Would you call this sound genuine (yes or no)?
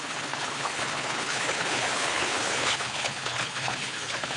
no